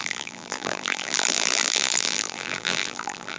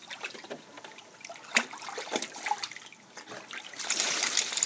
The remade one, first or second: first